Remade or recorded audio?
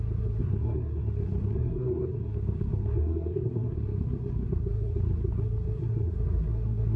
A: remade